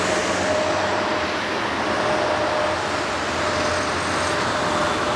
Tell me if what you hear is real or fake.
real